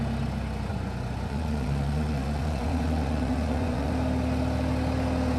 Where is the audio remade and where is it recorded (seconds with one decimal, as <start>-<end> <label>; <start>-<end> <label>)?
0.0-0.7 recorded; 0.7-3.9 remade; 3.9-5.4 recorded